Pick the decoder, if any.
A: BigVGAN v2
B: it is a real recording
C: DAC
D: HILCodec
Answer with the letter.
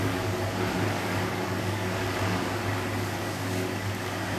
C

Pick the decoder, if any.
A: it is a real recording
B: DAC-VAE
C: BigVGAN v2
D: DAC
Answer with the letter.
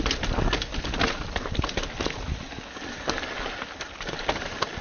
A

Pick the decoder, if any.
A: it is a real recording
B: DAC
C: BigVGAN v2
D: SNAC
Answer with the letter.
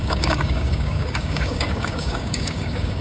B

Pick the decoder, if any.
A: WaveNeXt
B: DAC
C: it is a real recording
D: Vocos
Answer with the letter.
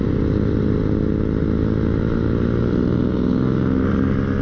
C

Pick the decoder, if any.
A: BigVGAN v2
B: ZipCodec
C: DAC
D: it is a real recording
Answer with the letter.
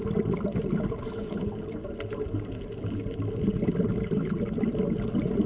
D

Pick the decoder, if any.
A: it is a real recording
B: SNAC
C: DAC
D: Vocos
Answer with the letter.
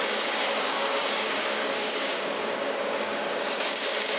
C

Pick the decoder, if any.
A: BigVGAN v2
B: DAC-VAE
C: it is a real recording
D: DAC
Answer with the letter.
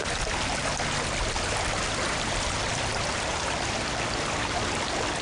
C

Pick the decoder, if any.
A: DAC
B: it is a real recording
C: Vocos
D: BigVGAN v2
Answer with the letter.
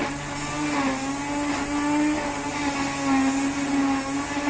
B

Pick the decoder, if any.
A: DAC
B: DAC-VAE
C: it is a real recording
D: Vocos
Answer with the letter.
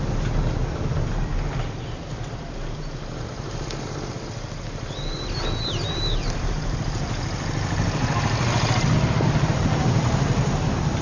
C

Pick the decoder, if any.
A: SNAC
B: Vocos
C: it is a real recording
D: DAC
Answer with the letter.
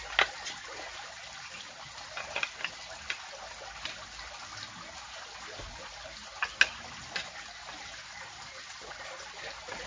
C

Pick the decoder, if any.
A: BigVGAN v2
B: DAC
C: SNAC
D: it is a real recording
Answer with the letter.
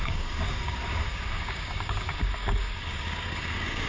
B